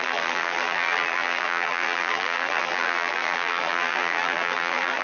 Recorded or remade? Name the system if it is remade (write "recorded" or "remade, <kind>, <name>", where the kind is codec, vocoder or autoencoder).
remade, vocoder, BigVGAN v2